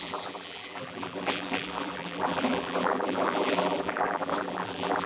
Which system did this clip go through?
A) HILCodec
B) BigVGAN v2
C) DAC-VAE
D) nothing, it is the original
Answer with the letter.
B